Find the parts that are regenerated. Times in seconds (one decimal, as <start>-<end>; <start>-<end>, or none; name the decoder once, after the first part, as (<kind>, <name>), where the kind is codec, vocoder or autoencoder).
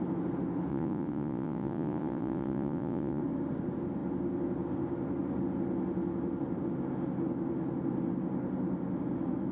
0.7-3.2 (vocoder, Vocos)